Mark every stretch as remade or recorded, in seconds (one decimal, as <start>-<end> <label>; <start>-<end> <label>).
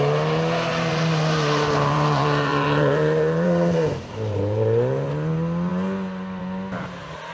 0.0-0.7 recorded; 0.7-5.1 remade; 5.1-7.3 recorded